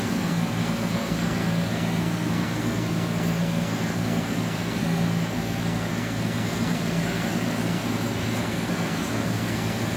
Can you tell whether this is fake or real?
fake